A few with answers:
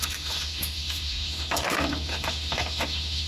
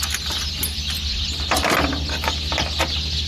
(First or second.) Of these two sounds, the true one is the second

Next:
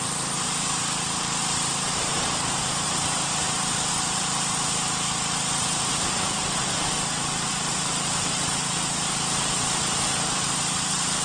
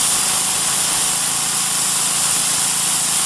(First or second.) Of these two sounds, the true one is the second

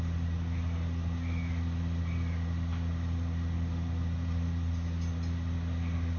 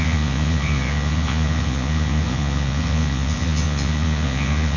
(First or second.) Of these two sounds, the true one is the first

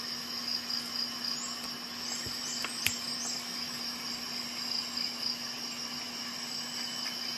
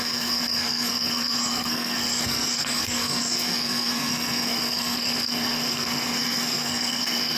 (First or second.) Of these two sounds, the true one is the first